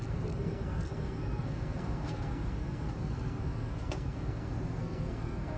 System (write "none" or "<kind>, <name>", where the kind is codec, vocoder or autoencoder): codec, SNAC